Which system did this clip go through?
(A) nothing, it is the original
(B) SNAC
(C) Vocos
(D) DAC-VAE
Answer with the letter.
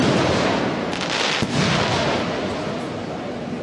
A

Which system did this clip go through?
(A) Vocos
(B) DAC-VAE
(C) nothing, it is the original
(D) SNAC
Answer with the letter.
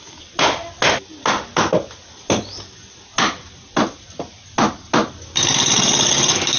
C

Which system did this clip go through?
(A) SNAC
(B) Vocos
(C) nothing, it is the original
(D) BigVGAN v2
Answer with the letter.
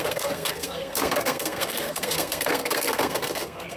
A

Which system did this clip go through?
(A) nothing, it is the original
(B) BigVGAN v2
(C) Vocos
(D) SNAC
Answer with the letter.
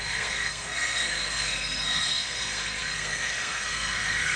D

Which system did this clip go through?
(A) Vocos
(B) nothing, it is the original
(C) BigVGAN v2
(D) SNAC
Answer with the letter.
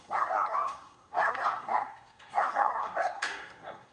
D